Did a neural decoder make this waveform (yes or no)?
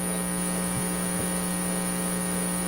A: no